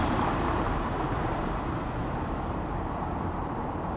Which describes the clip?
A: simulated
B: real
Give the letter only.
A